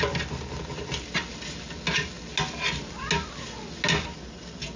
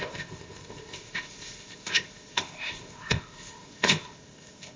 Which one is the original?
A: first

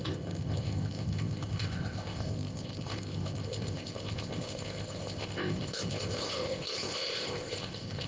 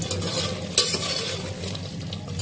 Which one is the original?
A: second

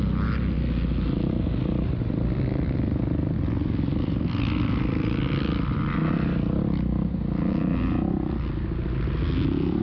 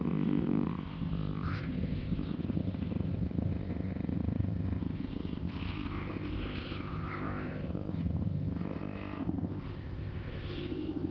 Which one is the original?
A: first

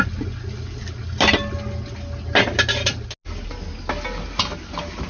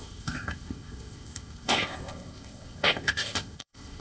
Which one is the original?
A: first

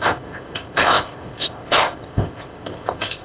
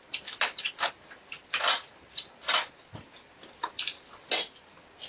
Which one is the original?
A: second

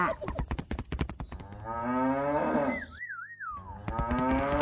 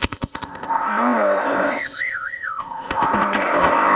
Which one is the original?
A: first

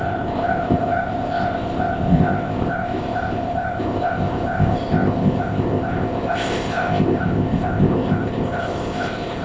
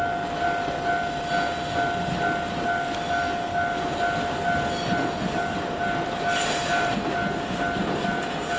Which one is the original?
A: second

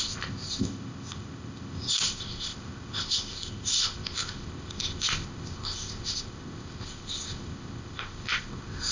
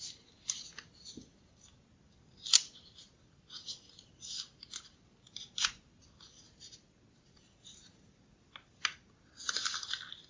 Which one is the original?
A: second